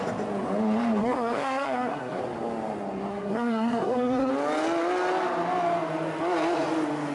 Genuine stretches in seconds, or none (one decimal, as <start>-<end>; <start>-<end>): 0.0-1.0; 2.2-3.1; 4.3-7.1